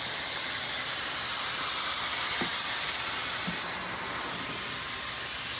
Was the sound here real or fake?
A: real